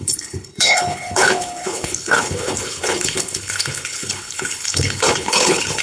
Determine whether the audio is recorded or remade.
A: remade